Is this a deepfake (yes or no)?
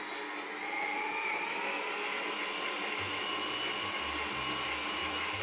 no